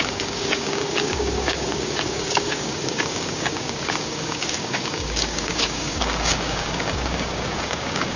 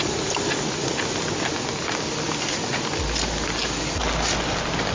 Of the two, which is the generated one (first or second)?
first